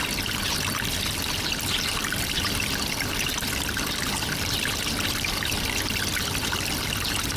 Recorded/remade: recorded